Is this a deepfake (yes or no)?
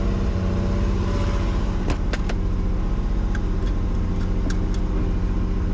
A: no